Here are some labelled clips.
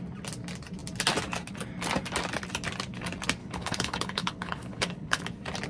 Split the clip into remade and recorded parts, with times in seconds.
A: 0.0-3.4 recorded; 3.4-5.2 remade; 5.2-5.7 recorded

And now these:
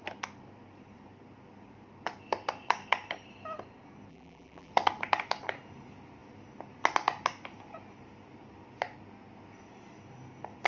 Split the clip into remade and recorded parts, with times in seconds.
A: 0.0-4.1 recorded; 4.1-4.7 remade; 4.7-10.7 recorded